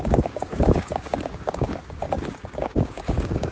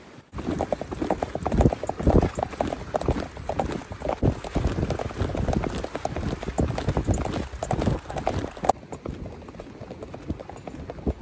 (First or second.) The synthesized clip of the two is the first